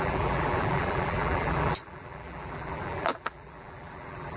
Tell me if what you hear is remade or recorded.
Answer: remade